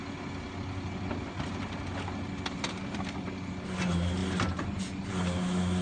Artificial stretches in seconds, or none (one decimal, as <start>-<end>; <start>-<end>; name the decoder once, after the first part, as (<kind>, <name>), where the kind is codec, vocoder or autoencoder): none